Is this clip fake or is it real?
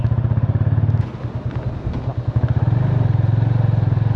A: real